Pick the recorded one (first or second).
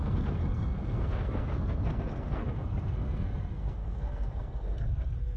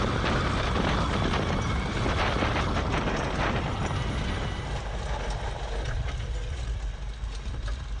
second